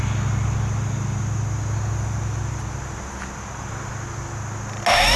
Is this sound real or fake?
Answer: real